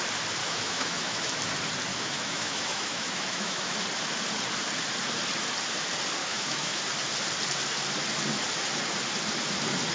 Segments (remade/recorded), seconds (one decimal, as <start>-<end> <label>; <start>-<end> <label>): 0.0-0.4 recorded; 0.4-1.3 remade; 1.3-1.9 recorded; 1.9-3.7 remade; 3.7-6.2 recorded; 6.2-6.8 remade; 6.8-9.9 recorded